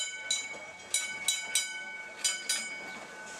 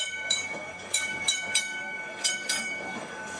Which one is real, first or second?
first